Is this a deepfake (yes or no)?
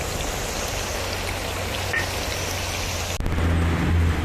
no